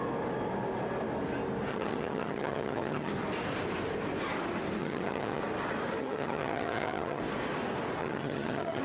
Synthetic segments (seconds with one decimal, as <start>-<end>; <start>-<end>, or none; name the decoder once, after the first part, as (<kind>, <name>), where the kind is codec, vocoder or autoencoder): 1.7-3.1 (vocoder, HiFi-GAN); 4.8-5.4; 6.0-7.2; 8.0-8.8

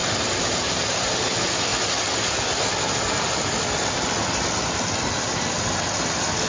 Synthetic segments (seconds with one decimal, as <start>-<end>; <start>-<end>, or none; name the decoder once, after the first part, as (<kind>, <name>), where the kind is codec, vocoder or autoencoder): none